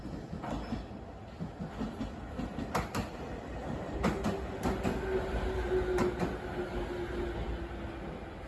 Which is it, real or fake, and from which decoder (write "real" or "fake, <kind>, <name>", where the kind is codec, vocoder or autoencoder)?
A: real